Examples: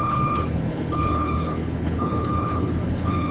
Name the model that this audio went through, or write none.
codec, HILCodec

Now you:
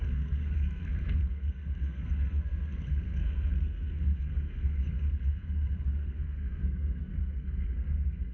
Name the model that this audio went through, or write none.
codec, SNAC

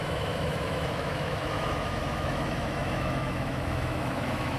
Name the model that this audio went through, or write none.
autoencoder, DAC-VAE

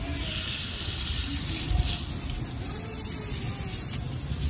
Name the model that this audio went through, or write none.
none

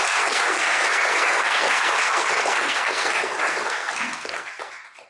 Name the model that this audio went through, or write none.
codec, SNAC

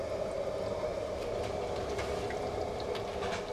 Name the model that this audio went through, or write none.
none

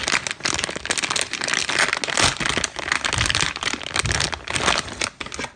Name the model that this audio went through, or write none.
none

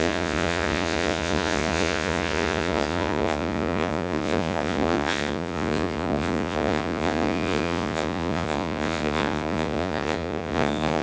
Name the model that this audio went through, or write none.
vocoder, Vocos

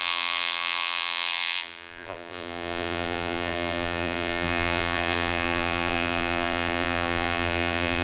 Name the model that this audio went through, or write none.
vocoder, BigVGAN v2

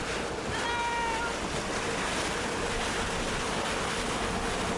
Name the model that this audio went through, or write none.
none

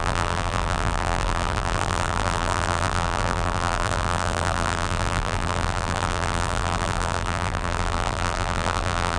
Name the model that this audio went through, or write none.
vocoder, BigVGAN v2